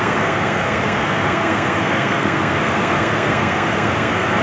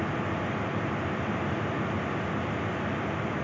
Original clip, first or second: second